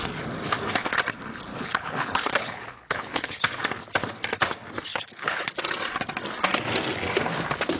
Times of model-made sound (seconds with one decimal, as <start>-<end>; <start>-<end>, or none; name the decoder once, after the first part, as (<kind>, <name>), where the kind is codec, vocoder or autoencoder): 1.5-3.6 (codec, HILCodec); 4.9-5.5